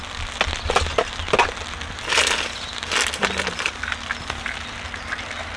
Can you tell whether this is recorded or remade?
recorded